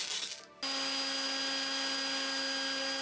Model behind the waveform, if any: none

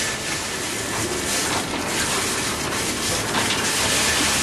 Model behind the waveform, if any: none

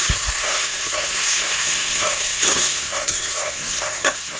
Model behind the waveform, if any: codec, SNAC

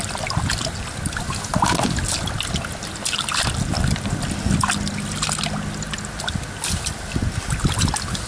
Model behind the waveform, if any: none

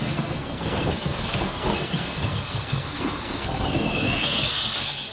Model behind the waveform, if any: codec, SNAC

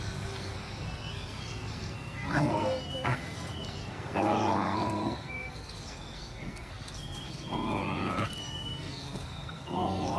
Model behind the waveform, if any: codec, SNAC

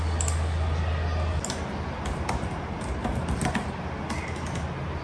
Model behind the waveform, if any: none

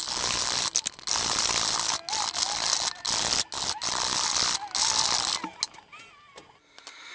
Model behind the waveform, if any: none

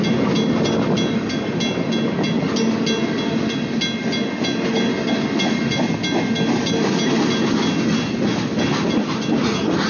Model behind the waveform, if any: none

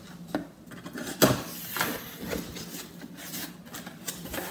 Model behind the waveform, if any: none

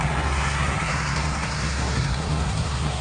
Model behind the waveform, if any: codec, SNAC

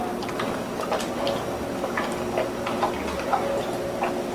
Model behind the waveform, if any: none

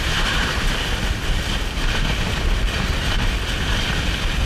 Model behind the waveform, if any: none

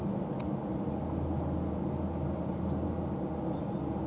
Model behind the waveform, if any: none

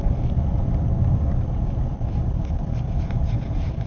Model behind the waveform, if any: none